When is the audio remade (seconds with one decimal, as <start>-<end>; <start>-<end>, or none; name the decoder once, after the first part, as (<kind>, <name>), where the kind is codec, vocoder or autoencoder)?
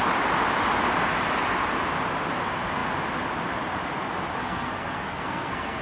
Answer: 4.4-5.8 (codec, SNAC)